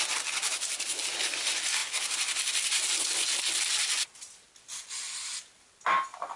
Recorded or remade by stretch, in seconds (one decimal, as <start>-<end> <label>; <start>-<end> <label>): 0.0-6.4 recorded